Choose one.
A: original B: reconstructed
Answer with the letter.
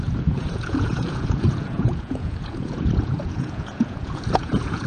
B